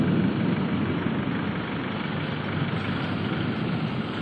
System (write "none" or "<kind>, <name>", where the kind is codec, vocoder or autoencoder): none